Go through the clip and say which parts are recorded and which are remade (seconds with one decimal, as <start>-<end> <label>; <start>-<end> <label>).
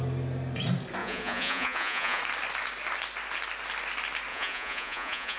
0.0-1.0 recorded; 1.0-2.2 remade; 2.2-4.3 recorded; 4.3-5.4 remade